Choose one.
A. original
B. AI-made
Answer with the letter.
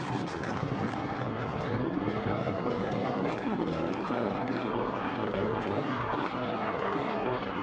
B